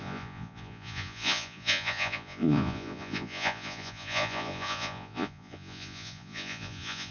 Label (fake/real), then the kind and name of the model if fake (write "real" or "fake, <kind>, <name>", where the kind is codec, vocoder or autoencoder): fake, vocoder, Vocos